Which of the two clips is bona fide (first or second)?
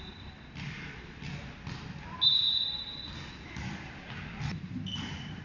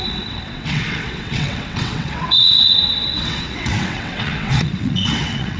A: first